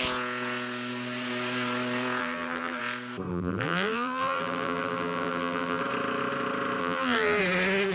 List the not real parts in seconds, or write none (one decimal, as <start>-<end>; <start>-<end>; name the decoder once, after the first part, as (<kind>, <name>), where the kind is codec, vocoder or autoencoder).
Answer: 2.2-2.8 (vocoder, BigVGAN v2); 3.3-5.8; 6.8-7.4